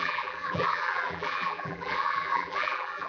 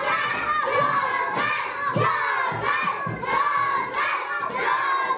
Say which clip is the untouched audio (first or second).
second